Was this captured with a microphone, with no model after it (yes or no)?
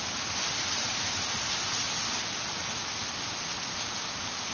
yes